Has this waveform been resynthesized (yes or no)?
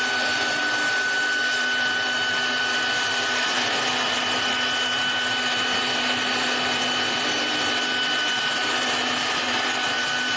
no